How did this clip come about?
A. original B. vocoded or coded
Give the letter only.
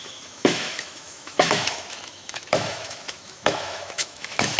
B